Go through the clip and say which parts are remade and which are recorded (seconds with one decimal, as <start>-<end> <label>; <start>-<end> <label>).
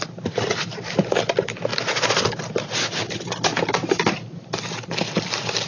0.0-5.7 recorded